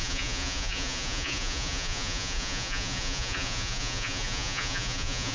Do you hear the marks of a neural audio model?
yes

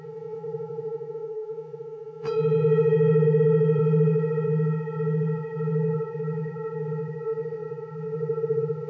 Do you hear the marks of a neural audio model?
yes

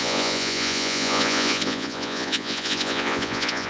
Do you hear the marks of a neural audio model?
yes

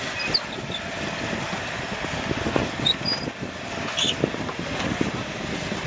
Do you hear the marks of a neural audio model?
no